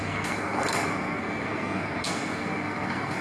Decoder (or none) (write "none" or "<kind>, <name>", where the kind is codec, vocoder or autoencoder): codec, SNAC